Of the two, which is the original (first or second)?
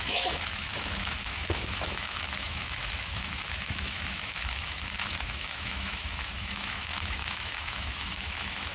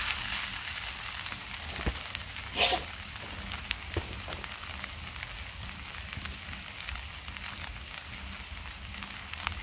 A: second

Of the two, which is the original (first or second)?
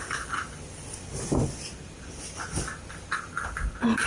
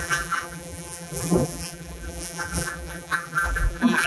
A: first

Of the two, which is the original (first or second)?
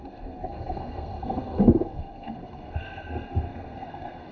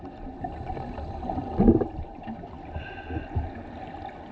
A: second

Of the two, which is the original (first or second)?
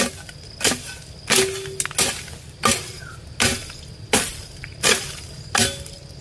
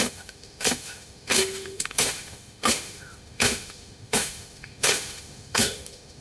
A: first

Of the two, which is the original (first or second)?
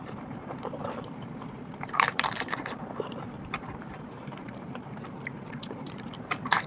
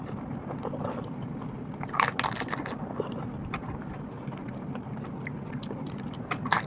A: second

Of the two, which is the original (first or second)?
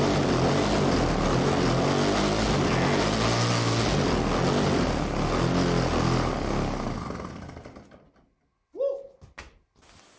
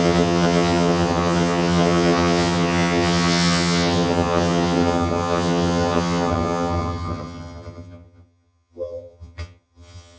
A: first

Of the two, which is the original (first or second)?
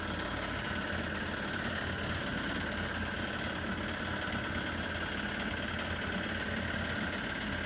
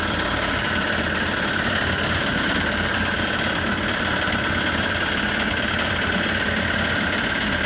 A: first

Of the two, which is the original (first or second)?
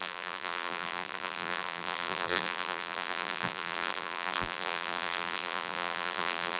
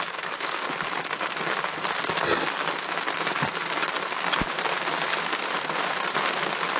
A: second